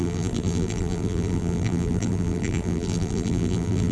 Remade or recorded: remade